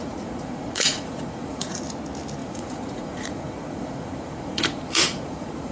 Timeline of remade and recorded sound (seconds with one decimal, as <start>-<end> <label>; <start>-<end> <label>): 0.0-1.8 remade; 1.8-2.4 recorded; 2.4-5.7 remade